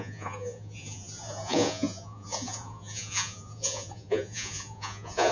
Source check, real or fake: fake